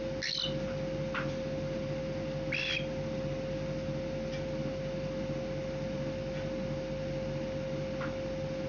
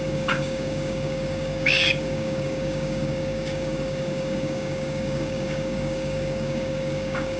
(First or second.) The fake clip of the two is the second